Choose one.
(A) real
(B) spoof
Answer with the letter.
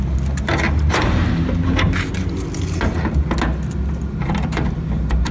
A